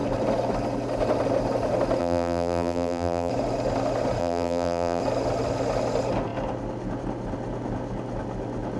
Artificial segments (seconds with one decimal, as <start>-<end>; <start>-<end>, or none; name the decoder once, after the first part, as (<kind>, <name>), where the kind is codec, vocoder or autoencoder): 2.0-3.3 (vocoder, BigVGAN v2); 4.2-5.0